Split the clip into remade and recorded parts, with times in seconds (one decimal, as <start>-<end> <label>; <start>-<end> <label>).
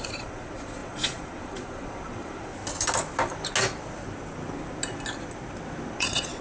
0.0-2.5 remade; 2.5-6.0 recorded; 6.0-6.4 remade